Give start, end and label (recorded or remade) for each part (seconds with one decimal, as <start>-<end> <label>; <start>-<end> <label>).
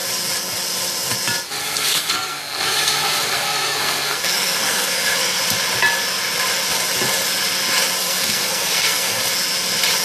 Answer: 0.0-1.6 recorded; 1.6-5.4 remade; 5.4-8.0 recorded; 8.0-9.2 remade; 9.2-10.0 recorded